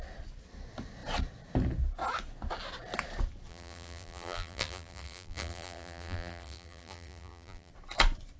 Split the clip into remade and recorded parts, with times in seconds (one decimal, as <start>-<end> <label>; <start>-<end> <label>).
0.0-3.5 recorded; 3.5-7.7 remade; 7.7-8.4 recorded